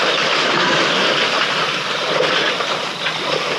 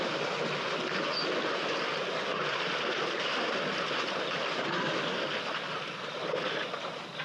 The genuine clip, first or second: second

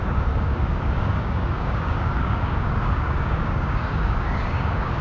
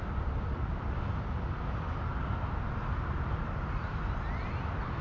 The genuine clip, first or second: second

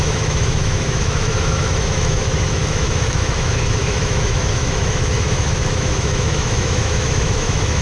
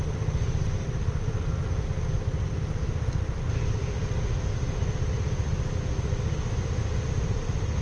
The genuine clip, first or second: second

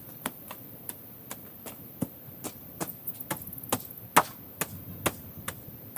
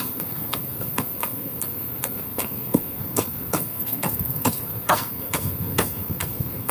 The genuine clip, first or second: first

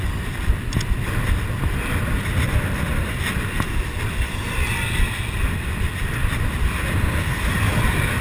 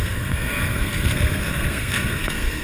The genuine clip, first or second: first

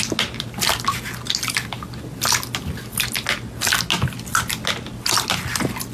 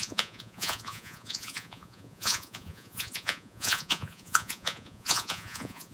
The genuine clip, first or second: first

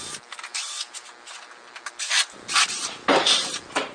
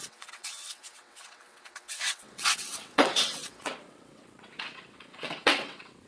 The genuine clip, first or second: first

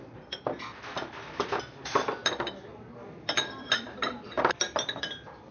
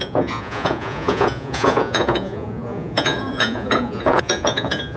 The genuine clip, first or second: first